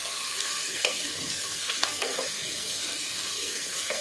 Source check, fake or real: fake